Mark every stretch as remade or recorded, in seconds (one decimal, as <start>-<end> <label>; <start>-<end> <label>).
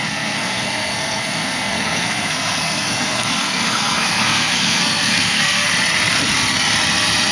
0.0-5.7 remade; 5.7-7.3 recorded